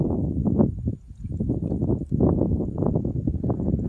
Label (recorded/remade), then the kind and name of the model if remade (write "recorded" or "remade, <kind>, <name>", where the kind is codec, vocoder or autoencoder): recorded